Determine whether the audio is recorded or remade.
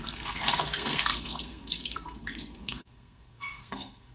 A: remade